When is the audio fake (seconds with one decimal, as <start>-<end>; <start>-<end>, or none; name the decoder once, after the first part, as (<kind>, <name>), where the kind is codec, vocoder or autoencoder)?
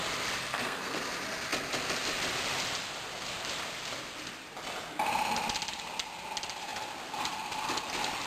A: 0.4-1.0 (codec, SNAC)